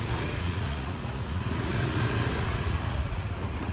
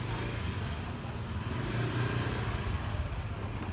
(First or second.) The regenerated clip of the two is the first